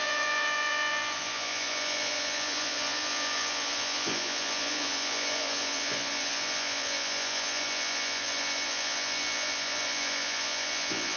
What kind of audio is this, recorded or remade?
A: remade